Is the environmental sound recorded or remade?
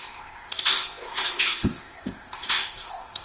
remade